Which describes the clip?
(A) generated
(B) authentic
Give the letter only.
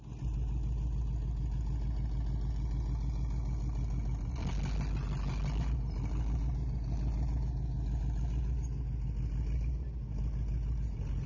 B